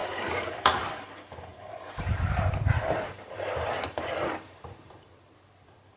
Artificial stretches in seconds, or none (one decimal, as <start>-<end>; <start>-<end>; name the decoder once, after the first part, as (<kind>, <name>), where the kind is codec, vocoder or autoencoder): 0.0-0.9 (vocoder, BigVGAN v2); 1.5-5.1